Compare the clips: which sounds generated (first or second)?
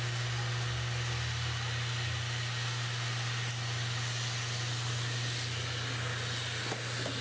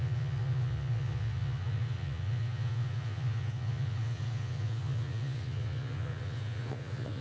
second